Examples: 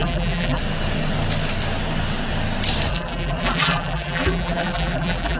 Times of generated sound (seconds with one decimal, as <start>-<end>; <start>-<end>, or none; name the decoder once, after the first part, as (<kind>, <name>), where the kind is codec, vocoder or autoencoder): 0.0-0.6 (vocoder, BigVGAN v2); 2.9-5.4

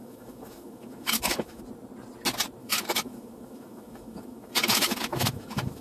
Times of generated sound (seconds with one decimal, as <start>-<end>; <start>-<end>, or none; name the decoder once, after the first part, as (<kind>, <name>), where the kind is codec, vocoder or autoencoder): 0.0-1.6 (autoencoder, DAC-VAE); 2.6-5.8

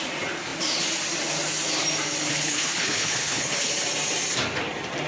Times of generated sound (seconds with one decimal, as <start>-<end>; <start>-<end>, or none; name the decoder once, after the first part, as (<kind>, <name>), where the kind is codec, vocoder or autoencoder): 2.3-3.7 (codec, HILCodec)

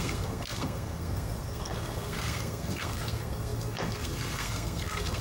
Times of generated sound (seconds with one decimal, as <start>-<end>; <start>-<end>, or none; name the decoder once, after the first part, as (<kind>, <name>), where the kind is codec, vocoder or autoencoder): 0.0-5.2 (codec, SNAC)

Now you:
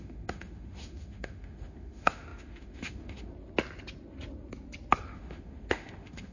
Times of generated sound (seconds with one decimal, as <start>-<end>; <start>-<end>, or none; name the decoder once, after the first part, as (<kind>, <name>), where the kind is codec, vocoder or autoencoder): 0.0-3.3 (autoencoder, DAC-VAE); 5.1-6.3

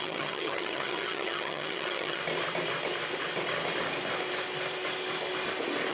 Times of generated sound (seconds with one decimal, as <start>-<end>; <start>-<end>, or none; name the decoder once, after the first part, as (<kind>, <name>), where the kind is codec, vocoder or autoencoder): 0.0-2.2 (vocoder, HiFi-GAN)